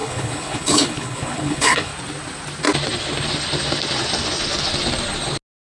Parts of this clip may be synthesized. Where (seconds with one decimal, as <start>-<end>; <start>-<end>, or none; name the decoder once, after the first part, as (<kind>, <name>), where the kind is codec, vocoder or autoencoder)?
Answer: 0.0-1.9 (codec, HILCodec)